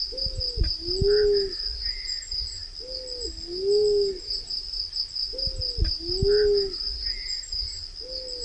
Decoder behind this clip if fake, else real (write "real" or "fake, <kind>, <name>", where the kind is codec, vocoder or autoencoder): real